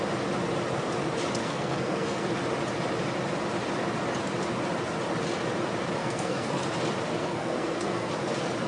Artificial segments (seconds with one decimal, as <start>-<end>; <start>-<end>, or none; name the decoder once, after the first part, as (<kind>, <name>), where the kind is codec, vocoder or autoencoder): 1.4-2.3 (codec, SNAC); 6.0-6.6; 7.2-8.1